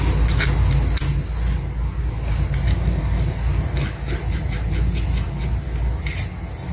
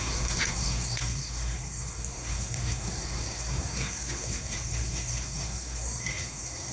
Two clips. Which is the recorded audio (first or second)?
first